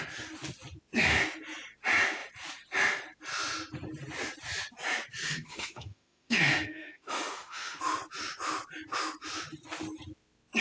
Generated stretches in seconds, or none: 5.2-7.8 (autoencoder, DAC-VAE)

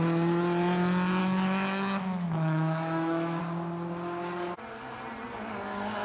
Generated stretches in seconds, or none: 1.2-3.4 (autoencoder, DAC-VAE)

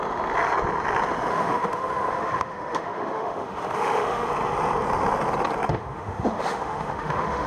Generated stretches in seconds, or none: 1.3-4.3 (autoencoder, DAC-VAE); 5.7-7.5

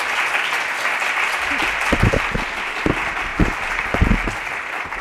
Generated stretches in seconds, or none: none

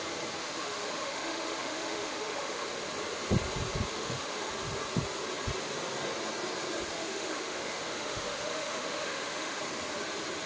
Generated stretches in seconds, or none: 0.4-2.7 (autoencoder, DAC-VAE); 3.9-4.5; 6.9-9.6

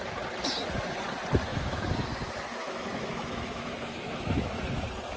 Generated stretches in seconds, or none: 1.5-4.6 (autoencoder, DAC-VAE)

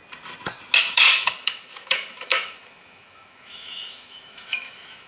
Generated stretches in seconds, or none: 0.8-5.1 (autoencoder, DAC-VAE)

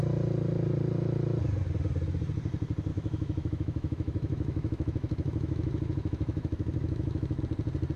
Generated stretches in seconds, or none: 2.9-7.4 (autoencoder, DAC-VAE)